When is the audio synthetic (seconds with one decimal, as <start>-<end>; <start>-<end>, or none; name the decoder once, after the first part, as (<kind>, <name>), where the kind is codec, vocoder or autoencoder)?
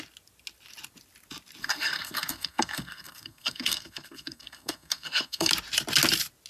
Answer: 1.6-5.5 (codec, SNAC)